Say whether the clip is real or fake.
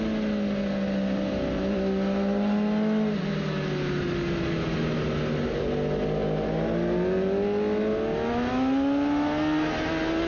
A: real